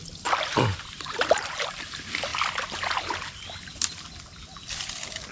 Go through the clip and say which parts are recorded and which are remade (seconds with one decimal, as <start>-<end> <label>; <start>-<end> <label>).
0.0-0.7 recorded; 0.7-1.7 remade; 1.7-5.3 recorded